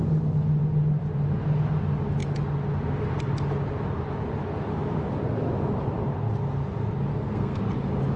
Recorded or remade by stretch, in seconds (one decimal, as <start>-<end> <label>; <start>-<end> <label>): 0.0-7.1 recorded; 7.1-7.6 remade; 7.6-8.2 recorded